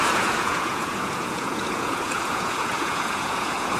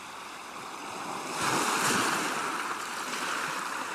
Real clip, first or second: second